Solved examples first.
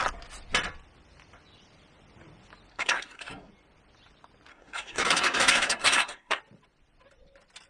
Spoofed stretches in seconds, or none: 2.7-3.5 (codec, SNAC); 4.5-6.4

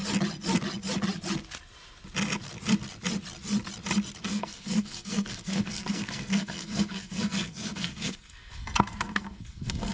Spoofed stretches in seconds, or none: 4.2-9.9 (codec, SNAC)